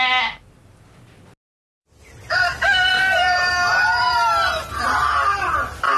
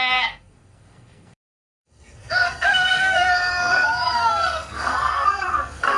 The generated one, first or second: second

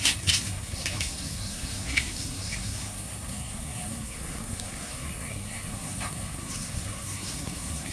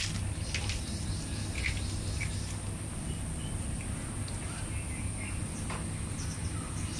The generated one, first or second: first